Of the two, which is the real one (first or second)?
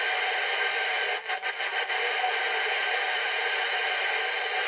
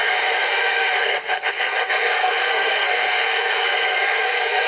first